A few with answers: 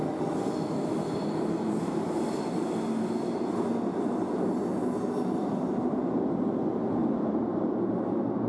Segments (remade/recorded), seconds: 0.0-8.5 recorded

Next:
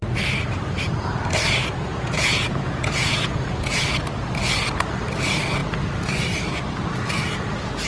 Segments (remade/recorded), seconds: 0.0-1.9 recorded; 1.9-3.8 remade; 3.8-7.9 recorded

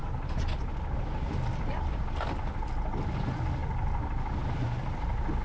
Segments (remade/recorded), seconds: 0.0-5.4 recorded

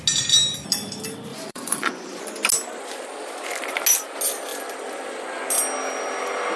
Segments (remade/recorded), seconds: 0.0-1.3 recorded; 1.3-2.2 remade; 2.2-6.6 recorded

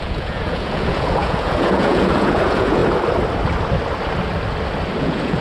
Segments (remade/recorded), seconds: 0.0-2.8 remade; 2.8-5.0 recorded; 5.0-5.4 remade

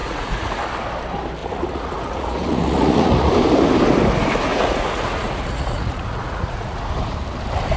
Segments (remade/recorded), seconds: 0.0-0.6 remade; 0.6-1.4 recorded; 1.4-3.3 remade; 3.3-4.5 recorded; 4.5-6.9 remade; 6.9-7.8 recorded

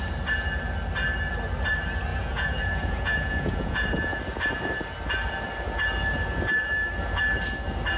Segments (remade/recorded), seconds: 0.0-2.1 recorded; 2.1-4.2 remade; 4.2-8.0 recorded